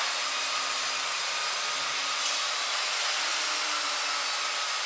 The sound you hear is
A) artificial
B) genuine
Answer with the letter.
B